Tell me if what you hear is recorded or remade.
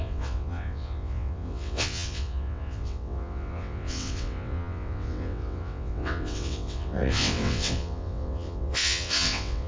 remade